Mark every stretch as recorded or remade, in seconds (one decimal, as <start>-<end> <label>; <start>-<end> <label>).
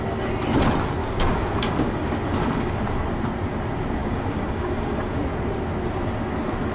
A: 0.0-1.0 recorded; 1.0-2.9 remade; 2.9-4.0 recorded; 4.0-5.2 remade; 5.2-6.7 recorded